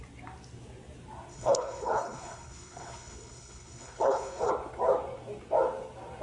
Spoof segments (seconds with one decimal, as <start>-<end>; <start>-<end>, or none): 1.3-4.5